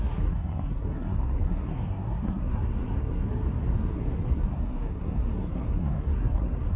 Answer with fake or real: fake